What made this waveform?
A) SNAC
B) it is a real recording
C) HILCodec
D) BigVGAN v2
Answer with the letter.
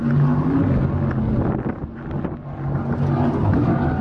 B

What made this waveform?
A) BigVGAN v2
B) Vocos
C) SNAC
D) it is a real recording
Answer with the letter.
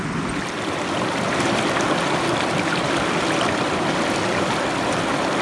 D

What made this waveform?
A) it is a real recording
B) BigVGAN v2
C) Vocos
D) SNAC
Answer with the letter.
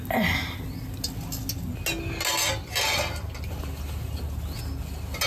A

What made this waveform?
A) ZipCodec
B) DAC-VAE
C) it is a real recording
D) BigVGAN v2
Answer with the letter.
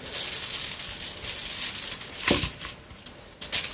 C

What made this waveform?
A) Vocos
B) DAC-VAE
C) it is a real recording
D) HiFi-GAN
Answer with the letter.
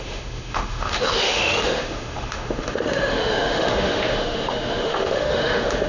B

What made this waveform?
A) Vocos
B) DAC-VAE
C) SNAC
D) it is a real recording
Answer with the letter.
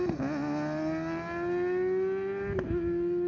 D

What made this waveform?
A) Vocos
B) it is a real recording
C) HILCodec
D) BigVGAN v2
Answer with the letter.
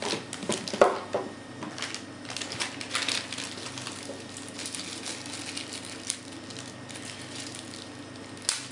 B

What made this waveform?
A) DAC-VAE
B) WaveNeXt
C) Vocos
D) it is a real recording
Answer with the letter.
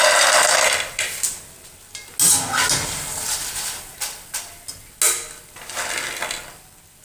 D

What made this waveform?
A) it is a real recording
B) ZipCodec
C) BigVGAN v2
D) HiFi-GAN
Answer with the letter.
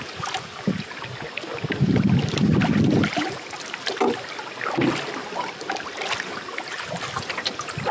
A